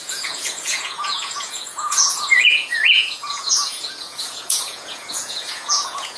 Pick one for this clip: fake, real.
fake